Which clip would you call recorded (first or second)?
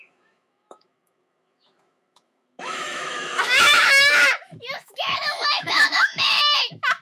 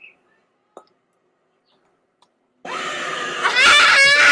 second